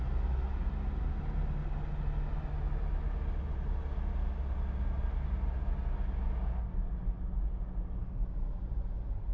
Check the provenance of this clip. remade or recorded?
recorded